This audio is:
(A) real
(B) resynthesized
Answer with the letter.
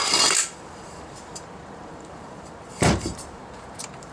B